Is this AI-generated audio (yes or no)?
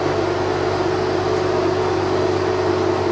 no